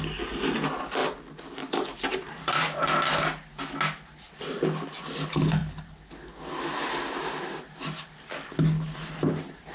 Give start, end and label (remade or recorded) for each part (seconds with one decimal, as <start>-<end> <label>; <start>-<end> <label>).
0.0-2.1 recorded; 2.1-2.6 remade; 2.6-9.7 recorded